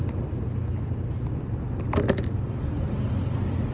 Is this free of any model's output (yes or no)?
yes